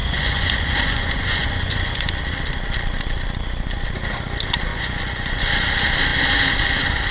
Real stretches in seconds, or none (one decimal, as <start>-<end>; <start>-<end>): 2.1-4.7; 5.5-7.1